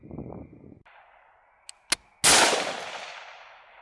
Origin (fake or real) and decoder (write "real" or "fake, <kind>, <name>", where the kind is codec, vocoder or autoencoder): real